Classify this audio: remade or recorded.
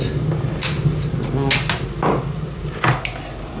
recorded